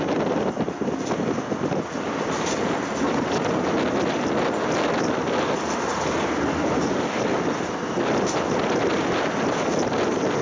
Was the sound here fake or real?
real